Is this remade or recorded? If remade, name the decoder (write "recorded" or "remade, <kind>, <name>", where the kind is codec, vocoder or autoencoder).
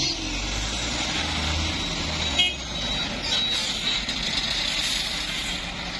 recorded